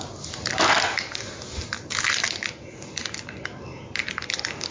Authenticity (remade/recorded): recorded